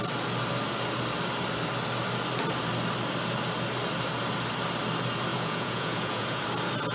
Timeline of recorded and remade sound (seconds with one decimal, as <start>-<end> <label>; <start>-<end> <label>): 0.0-5.3 recorded; 5.3-6.4 remade; 6.4-6.9 recorded